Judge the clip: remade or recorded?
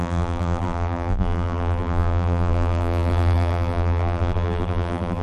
remade